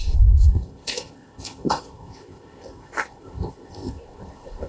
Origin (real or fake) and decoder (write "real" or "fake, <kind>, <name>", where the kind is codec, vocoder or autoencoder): fake, codec, ZipCodec